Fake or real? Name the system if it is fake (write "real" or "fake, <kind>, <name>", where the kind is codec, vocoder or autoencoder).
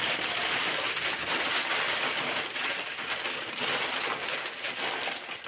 real